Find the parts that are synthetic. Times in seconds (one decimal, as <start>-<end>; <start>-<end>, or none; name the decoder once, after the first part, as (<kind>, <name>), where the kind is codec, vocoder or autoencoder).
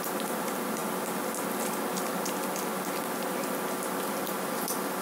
none